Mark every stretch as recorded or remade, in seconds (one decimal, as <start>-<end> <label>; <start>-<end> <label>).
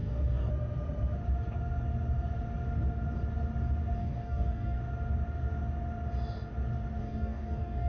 0.0-0.5 remade; 0.5-4.0 recorded; 4.0-4.8 remade; 4.8-7.0 recorded; 7.0-7.9 remade